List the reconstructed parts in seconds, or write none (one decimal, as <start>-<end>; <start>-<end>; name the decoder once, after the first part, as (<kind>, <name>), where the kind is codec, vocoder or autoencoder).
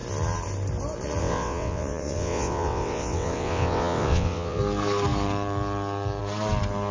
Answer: 1.2-4.6 (vocoder, WaveNeXt)